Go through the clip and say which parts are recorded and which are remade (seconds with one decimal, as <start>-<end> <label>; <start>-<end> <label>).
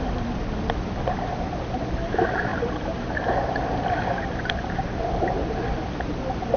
0.0-6.6 recorded